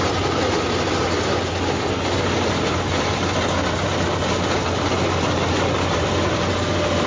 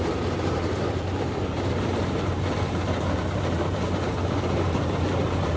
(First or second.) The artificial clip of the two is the second